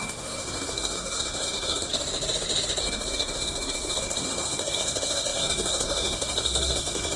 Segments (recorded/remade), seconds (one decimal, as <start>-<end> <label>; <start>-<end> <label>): 0.0-1.9 remade; 1.9-2.8 recorded; 2.8-7.2 remade